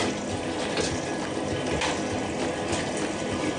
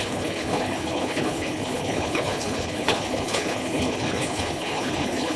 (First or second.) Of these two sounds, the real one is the first